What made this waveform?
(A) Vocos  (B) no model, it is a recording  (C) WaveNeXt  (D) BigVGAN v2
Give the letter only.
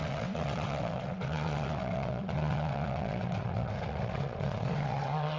C